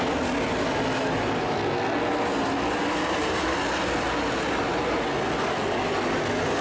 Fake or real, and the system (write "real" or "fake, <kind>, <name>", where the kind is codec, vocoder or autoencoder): real